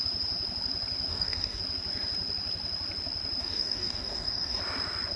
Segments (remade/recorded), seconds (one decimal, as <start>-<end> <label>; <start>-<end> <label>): 0.0-1.1 recorded; 1.1-1.6 remade; 1.6-3.4 recorded; 3.4-4.6 remade; 4.6-5.2 recorded